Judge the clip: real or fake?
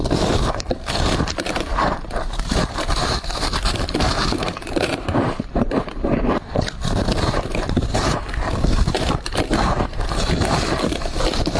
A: fake